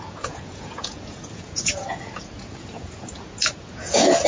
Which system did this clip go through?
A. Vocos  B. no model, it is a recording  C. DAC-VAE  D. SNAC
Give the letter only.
A